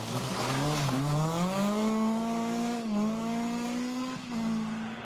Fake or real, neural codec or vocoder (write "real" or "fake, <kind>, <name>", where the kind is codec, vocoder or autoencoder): fake, codec, DAC